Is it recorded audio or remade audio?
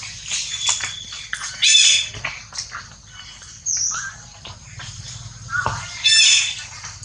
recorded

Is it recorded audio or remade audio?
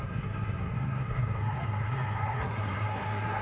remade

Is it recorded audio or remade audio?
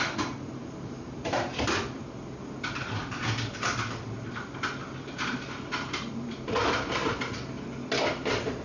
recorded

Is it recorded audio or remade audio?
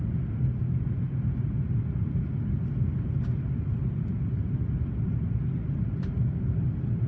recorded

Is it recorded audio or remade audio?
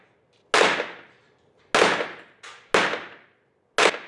recorded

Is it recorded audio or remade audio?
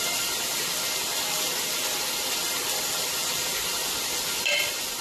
recorded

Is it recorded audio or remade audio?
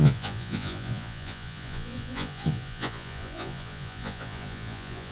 remade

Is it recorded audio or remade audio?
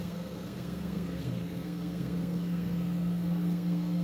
remade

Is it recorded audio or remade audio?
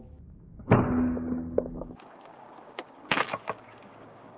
remade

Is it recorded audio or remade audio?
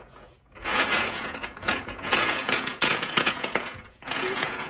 remade